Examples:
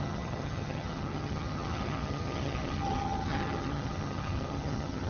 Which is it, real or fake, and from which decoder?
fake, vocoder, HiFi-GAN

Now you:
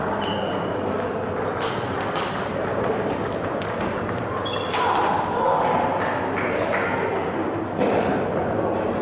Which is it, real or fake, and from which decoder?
real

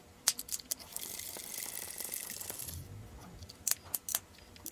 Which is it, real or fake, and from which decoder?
real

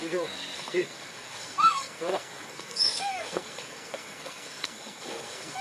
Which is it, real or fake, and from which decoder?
fake, codec, SNAC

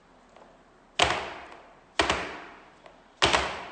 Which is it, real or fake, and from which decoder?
real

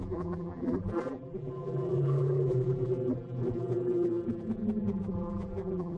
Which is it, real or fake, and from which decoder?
fake, vocoder, BigVGAN v2